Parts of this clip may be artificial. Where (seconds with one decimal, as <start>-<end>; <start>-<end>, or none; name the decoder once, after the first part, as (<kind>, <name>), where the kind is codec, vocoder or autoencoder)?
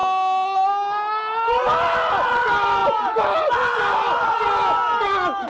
none